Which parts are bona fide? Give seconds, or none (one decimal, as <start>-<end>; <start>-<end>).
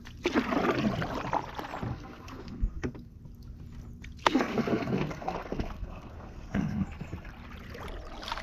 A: 0.0-1.9; 3.2-4.2; 7.3-8.4